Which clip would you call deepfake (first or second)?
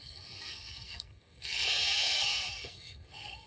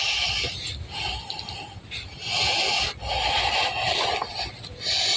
first